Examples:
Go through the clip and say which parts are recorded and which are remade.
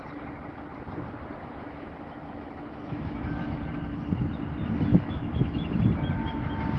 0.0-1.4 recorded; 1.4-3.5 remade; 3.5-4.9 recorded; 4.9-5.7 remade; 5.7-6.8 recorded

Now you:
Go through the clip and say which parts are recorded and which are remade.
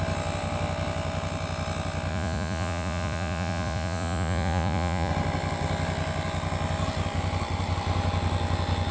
0.0-2.1 recorded; 2.1-5.1 remade; 5.1-8.9 recorded